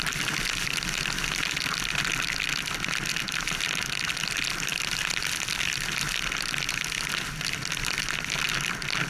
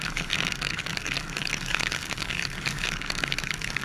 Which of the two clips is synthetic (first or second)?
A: second